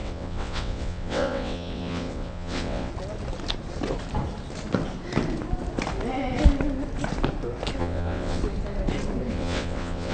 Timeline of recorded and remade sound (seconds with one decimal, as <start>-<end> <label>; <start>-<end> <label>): 0.0-2.9 remade; 2.9-7.8 recorded; 7.8-8.4 remade; 8.4-9.3 recorded; 9.3-10.1 remade